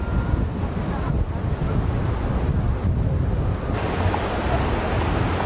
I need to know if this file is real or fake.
real